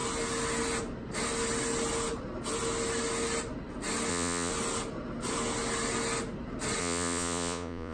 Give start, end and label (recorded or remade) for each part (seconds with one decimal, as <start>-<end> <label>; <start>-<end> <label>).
0.0-4.1 recorded; 4.1-4.5 remade; 4.5-6.8 recorded; 6.8-7.9 remade